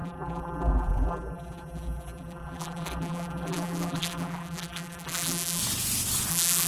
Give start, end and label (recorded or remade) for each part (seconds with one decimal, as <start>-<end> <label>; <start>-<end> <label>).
0.0-5.6 remade; 5.6-6.3 recorded; 6.3-6.7 remade